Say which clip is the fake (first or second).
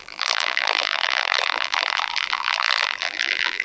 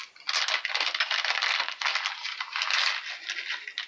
first